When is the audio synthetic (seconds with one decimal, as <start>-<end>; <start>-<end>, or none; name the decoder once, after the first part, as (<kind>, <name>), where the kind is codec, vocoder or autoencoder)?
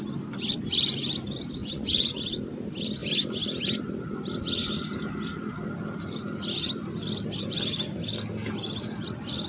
1.6-2.2 (vocoder, Vocos)